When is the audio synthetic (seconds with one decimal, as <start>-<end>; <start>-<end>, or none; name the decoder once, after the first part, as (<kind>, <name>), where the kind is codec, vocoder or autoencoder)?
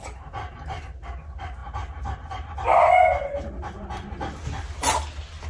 none